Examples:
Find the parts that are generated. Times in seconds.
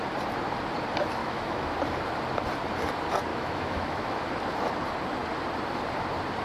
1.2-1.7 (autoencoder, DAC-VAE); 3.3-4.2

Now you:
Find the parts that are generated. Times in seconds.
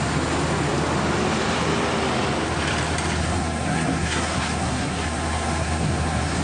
3.2-6.4 (codec, SNAC)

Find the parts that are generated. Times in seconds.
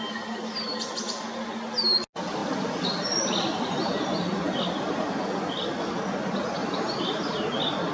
6.6-7.9 (vocoder, BigVGAN v2)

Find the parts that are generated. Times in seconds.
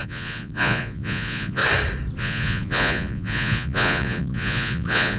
0.0-1.6 (vocoder, Vocos); 2.2-5.2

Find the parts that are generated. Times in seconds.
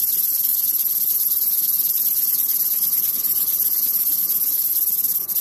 0.0-0.5 (vocoder, BigVGAN v2); 1.1-4.1